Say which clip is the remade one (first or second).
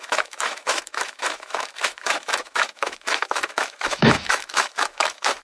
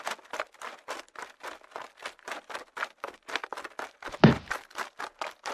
first